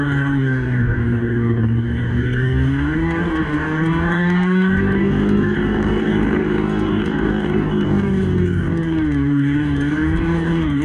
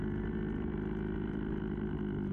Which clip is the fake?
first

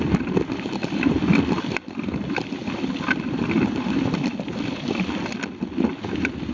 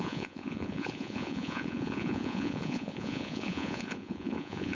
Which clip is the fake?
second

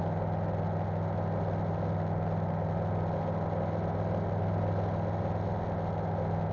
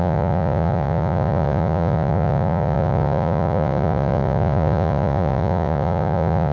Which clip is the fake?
second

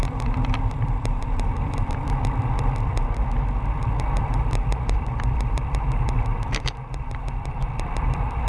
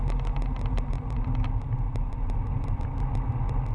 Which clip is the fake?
first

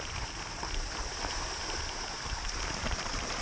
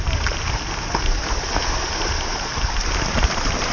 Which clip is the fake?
first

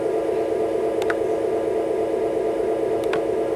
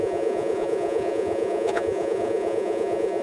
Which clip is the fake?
second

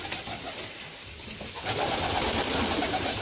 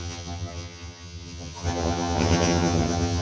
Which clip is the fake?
second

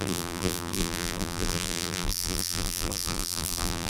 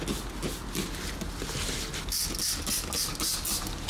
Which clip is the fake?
first